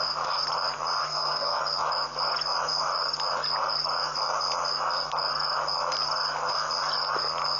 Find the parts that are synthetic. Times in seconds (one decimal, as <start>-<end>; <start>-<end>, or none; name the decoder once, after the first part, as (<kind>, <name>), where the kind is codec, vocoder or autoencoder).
1.0-1.6 (codec, SNAC)